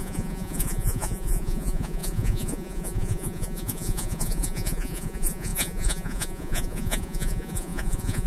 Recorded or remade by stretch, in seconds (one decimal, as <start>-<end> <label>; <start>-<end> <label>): 0.0-8.3 remade